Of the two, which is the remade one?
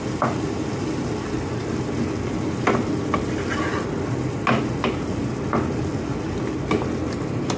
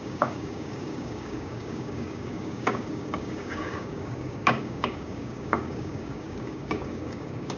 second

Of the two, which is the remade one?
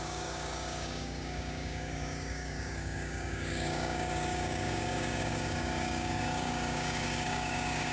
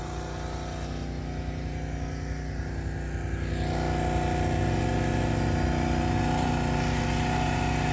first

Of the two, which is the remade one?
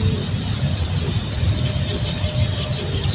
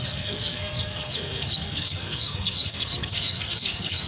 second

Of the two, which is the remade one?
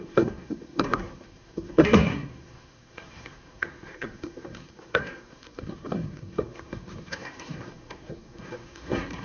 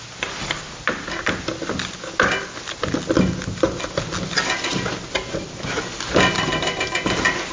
first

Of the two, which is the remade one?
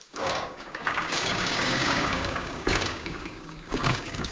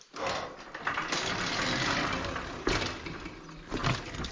first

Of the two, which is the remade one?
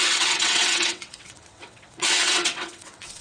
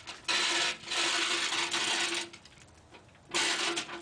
first